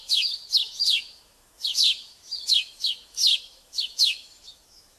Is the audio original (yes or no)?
no